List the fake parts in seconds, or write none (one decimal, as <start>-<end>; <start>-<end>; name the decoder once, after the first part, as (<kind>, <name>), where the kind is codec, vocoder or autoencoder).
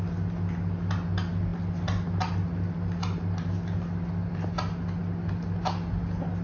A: none